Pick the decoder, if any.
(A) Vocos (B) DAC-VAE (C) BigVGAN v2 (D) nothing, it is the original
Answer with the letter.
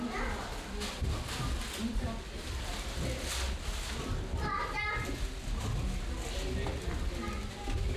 D